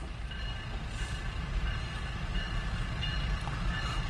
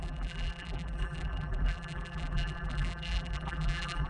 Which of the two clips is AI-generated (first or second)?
second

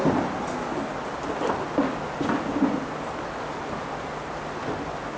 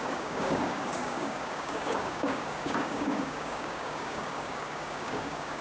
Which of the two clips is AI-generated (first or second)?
second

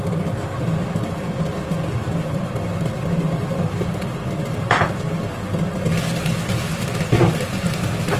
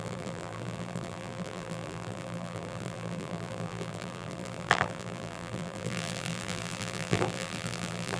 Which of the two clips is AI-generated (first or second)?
second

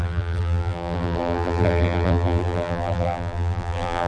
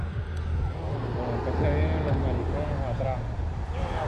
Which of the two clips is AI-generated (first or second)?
first